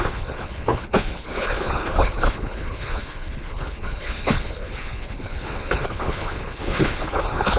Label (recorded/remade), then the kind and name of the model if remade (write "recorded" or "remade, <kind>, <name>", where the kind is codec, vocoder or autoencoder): remade, codec, HILCodec